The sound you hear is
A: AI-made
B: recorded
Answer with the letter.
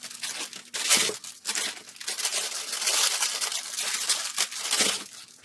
B